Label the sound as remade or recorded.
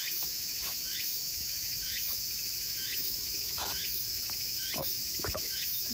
remade